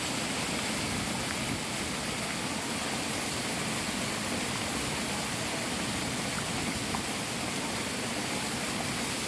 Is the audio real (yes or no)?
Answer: yes